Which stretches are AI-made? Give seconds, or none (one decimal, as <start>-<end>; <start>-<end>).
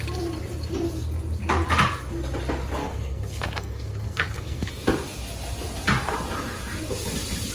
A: 2.8-4.7